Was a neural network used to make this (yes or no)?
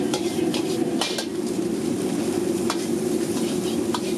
no